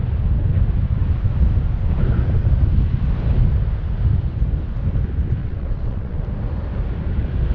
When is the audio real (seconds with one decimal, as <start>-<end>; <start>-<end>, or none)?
0.0-5.4; 6.2-7.5